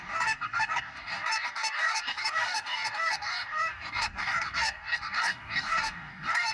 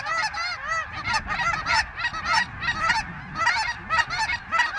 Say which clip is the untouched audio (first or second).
second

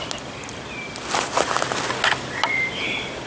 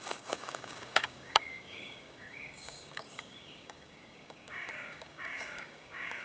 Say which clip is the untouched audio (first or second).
first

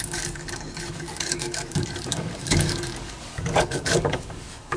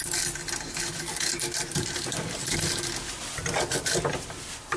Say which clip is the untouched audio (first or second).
second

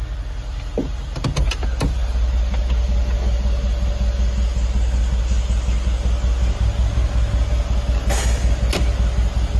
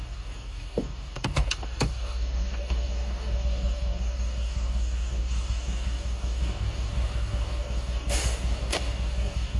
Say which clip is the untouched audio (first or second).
first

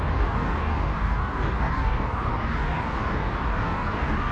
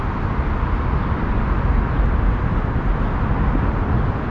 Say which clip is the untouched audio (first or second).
second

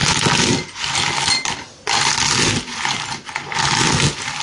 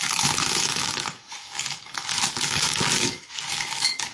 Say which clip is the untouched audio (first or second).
first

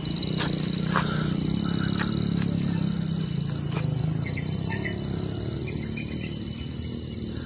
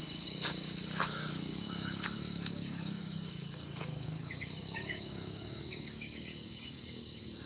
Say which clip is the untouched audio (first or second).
first